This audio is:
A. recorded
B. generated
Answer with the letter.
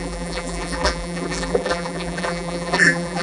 B